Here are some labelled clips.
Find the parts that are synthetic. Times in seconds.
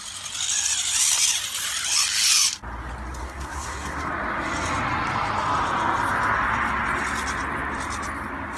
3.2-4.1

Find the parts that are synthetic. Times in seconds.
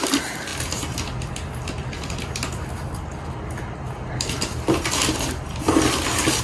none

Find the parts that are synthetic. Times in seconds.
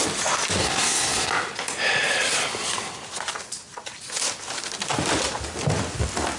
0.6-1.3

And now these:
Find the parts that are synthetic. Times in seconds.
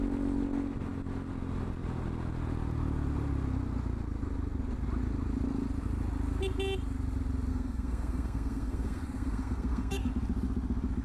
7.5-10.1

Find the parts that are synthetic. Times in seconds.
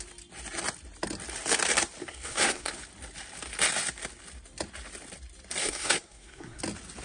2.0-2.7; 5.6-6.6